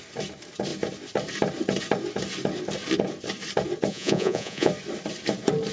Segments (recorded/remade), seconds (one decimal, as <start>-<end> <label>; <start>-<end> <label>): 0.0-3.9 recorded; 3.9-4.7 remade; 4.7-5.7 recorded